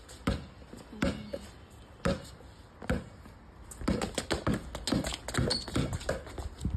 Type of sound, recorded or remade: recorded